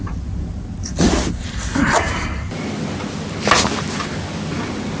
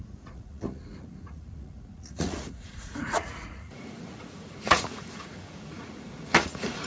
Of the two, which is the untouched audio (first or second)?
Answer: first